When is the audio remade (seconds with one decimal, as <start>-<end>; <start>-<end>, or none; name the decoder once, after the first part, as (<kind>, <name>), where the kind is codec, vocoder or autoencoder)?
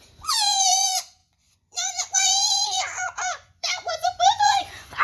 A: 0.0-5.0 (vocoder, Vocos)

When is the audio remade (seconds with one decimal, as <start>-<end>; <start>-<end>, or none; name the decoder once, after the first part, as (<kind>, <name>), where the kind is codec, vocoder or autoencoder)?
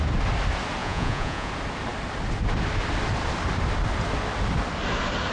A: 0.8-1.5 (vocoder, Vocos)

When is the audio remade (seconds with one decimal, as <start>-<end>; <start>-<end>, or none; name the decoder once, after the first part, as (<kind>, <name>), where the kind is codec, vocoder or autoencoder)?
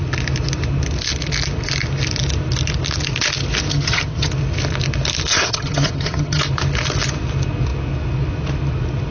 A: 3.7-4.3 (vocoder, HiFi-GAN); 5.3-6.4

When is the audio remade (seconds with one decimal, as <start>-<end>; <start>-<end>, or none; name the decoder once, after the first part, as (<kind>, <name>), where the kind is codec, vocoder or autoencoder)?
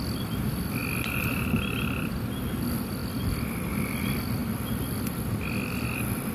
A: 3.0-3.7 (vocoder, BigVGAN v2); 4.4-6.3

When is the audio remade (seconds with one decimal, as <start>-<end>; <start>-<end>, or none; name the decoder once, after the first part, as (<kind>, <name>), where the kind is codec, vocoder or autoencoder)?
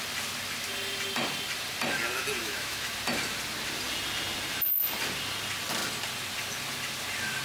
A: 2.4-2.9 (autoencoder, DAC-VAE)